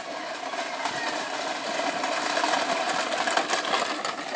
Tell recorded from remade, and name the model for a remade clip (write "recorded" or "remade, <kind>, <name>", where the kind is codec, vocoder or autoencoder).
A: remade, vocoder, BigVGAN v2